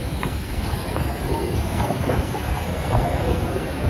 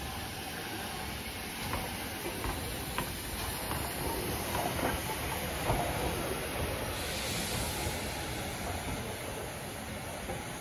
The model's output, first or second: first